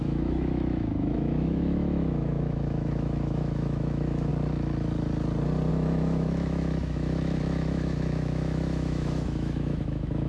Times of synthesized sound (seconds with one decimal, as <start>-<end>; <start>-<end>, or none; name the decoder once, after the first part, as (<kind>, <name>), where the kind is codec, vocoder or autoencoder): 0.0-4.3 (autoencoder, DAC-VAE); 5.7-10.3